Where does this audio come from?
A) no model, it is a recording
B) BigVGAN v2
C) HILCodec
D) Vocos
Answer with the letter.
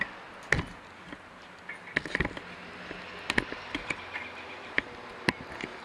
A